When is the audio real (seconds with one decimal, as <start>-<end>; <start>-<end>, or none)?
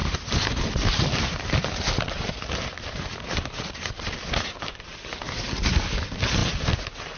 3.9-7.2